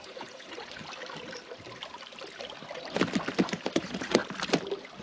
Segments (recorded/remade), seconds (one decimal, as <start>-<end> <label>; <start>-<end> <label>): 0.0-0.8 remade; 0.8-3.8 recorded; 3.8-4.2 remade; 4.2-5.0 recorded